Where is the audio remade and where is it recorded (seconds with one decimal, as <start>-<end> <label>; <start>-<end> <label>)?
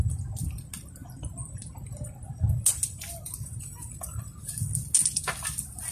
0.0-5.9 recorded